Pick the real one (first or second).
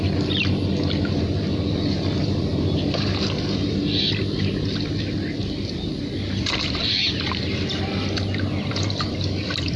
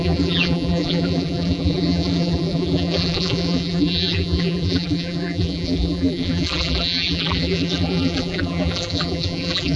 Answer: first